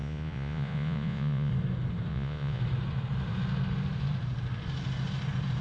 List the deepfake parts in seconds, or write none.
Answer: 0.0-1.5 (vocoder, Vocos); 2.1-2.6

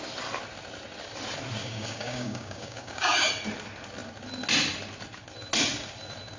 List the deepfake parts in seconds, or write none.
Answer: 1.6-3.3 (codec, DAC)